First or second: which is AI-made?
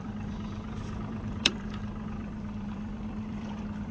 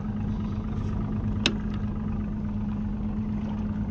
first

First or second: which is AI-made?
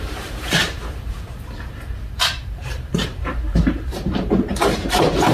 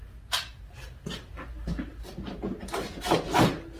first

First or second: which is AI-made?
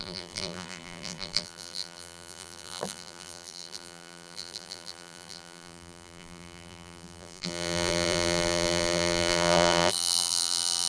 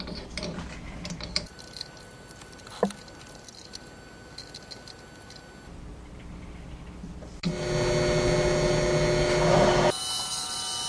first